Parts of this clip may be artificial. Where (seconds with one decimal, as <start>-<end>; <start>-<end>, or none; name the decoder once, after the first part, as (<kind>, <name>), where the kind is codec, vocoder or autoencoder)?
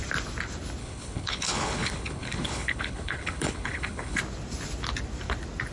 0.8-4.2 (codec, HILCodec)